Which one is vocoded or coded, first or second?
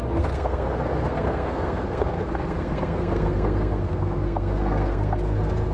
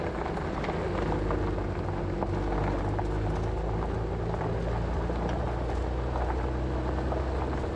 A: first